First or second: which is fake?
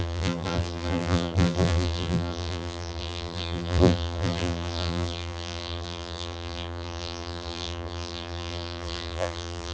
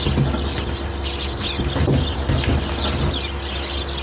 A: first